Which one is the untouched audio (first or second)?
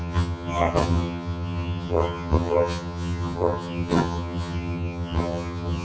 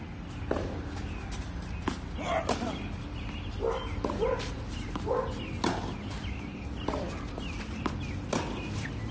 second